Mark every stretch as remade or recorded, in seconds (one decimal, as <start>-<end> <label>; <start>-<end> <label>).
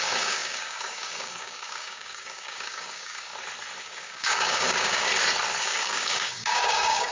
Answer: 0.0-3.3 remade; 3.3-3.8 recorded; 3.8-5.1 remade; 5.1-5.6 recorded; 5.6-7.1 remade